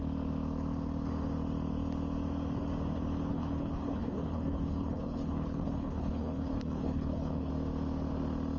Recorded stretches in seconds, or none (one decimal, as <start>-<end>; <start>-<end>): 0.0-3.3; 7.5-8.6